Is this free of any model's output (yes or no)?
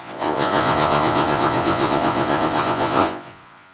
no